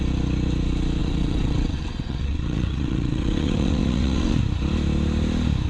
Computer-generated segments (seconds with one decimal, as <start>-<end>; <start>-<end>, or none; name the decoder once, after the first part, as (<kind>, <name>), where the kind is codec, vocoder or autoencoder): 1.0-4.4 (vocoder, WaveNeXt)